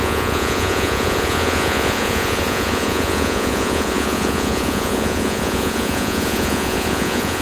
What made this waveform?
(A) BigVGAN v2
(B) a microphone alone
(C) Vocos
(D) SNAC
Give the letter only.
C